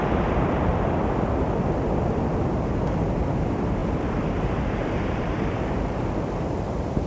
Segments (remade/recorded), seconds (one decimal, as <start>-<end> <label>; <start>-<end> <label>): 0.0-0.7 remade; 0.7-2.4 recorded; 2.4-3.8 remade; 3.8-4.9 recorded; 4.9-7.1 remade